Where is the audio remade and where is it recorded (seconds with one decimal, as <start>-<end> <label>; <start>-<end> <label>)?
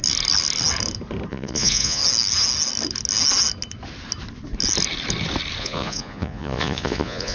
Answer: 0.0-1.3 recorded; 1.3-2.0 remade; 2.0-5.6 recorded; 5.6-7.3 remade